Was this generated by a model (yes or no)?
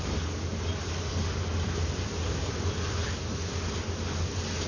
no